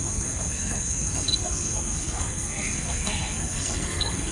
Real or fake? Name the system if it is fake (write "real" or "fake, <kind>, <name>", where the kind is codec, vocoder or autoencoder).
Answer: fake, codec, SNAC